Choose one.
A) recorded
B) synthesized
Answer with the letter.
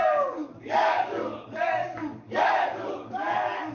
B